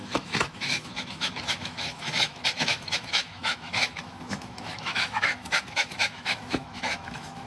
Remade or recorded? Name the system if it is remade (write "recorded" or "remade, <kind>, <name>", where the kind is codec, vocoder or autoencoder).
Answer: remade, autoencoder, DAC-VAE